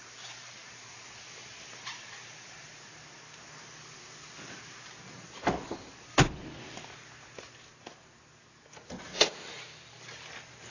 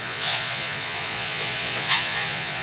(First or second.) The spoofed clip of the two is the second